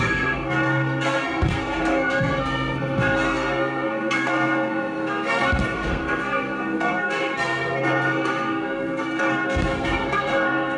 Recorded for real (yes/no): no